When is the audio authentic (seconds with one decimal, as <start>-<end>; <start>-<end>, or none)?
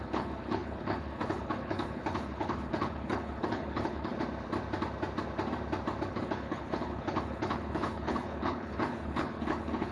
4.1-6.1